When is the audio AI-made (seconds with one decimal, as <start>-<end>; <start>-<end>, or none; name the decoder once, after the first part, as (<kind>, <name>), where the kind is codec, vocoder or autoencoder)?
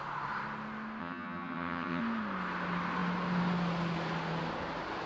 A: 1.0-2.0 (vocoder, HiFi-GAN)